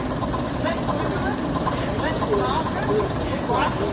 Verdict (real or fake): real